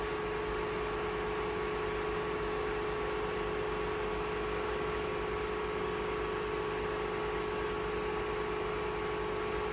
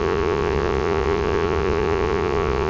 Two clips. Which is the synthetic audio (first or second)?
second